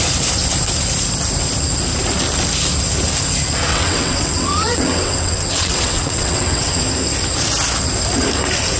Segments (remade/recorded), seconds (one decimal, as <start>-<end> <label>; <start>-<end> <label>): 0.0-3.7 recorded; 3.7-6.8 remade; 6.8-8.8 recorded